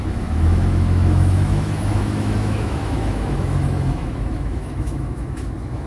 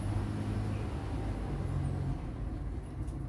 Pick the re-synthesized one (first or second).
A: first